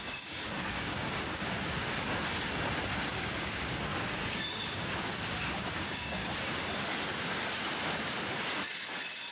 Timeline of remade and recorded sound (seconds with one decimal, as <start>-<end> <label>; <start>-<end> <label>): 0.0-2.1 remade; 2.1-3.1 recorded; 3.1-6.2 remade; 6.2-9.3 recorded